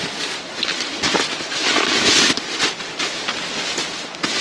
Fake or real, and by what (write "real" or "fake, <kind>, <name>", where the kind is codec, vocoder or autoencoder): real